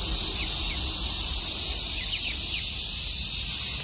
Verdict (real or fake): real